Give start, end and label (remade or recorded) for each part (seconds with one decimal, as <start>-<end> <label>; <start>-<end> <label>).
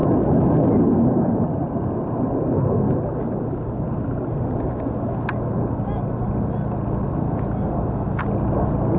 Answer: 0.0-9.0 recorded